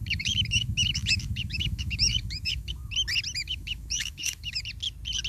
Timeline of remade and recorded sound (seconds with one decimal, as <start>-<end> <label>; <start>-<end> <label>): 0.0-2.9 remade; 2.9-3.4 recorded; 3.4-4.6 remade; 4.6-5.3 recorded